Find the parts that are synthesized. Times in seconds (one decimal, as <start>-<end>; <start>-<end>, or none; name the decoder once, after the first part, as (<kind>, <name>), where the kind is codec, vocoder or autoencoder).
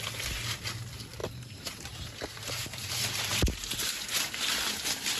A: 1.2-2.9 (vocoder, BigVGAN v2); 3.3-4.5